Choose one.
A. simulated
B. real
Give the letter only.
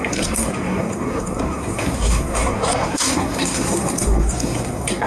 A